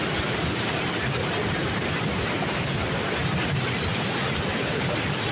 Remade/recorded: recorded